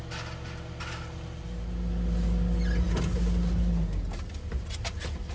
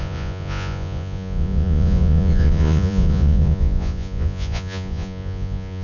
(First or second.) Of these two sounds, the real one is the first